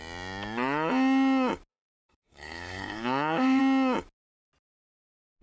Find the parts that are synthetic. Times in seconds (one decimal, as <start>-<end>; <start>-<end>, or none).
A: 1.7-3.6